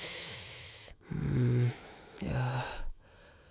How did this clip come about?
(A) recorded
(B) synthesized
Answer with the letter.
B